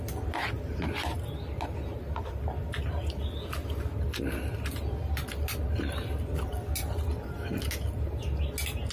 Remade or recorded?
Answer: recorded